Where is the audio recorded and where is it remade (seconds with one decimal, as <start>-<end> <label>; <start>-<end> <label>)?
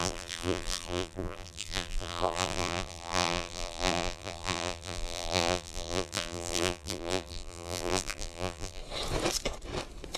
0.0-8.8 remade; 8.8-10.2 recorded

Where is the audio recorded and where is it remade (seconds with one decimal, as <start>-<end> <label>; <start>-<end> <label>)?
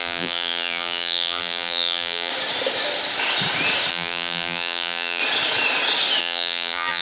0.0-2.3 remade; 2.3-3.9 recorded; 3.9-5.2 remade; 5.2-6.2 recorded; 6.2-7.0 remade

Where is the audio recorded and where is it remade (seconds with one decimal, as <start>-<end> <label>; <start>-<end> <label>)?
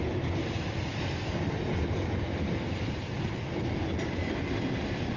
0.0-5.2 recorded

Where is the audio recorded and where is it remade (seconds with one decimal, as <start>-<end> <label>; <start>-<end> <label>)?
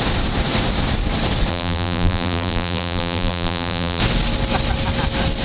0.0-1.5 recorded; 1.5-4.0 remade; 4.0-5.4 recorded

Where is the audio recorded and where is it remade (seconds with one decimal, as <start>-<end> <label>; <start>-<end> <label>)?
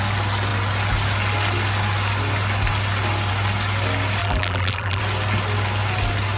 0.0-4.2 recorded; 4.2-5.0 remade; 5.0-6.4 recorded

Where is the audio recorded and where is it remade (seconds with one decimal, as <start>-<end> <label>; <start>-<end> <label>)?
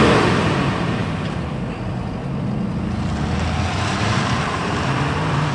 0.0-1.0 remade; 1.0-3.7 recorded; 3.7-5.5 remade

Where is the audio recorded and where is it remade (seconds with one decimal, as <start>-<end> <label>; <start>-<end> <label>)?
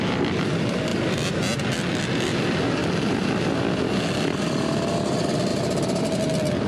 0.0-2.8 recorded; 2.8-3.9 remade; 3.9-5.5 recorded; 5.5-6.0 remade; 6.0-6.7 recorded